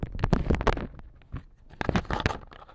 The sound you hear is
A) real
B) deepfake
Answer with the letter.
A